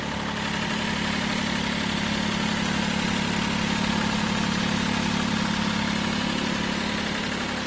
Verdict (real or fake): real